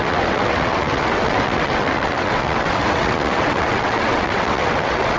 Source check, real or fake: fake